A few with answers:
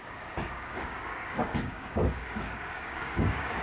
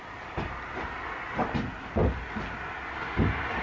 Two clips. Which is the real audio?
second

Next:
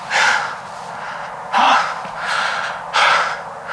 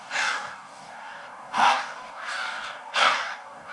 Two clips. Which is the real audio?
first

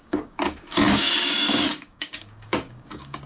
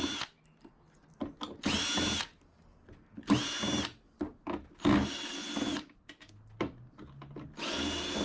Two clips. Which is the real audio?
second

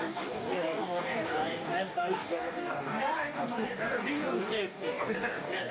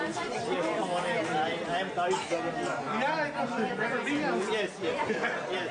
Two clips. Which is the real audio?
second